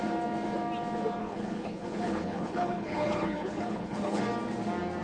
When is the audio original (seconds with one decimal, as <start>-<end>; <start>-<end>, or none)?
0.0-1.2; 4.2-5.0